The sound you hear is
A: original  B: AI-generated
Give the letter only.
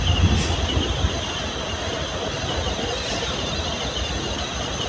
A